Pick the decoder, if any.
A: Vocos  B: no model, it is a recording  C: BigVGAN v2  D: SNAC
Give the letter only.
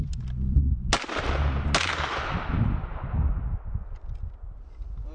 B